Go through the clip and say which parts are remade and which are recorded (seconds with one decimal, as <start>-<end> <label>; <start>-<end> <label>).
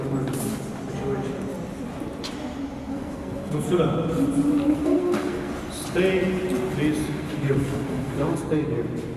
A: 0.0-2.9 recorded; 2.9-3.8 remade; 3.8-4.6 recorded; 4.6-5.5 remade; 5.5-7.0 recorded; 7.0-8.7 remade; 8.7-9.2 recorded